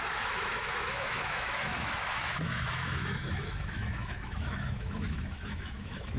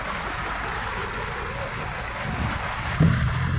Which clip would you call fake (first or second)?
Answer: first